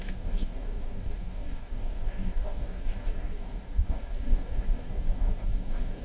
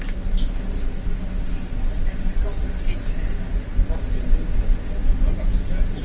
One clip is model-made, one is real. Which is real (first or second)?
second